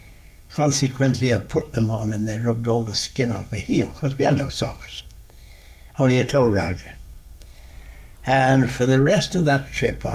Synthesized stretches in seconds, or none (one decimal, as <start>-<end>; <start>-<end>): 0.0-7.7; 8.8-10.1